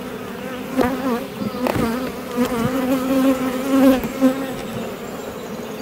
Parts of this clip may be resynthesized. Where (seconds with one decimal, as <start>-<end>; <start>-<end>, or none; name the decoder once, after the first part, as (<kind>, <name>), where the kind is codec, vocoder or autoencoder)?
none